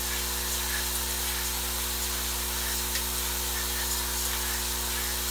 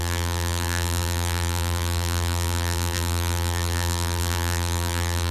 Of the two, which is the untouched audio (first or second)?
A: first